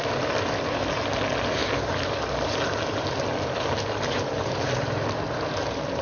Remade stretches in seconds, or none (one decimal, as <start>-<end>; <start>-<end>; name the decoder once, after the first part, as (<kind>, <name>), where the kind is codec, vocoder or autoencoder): none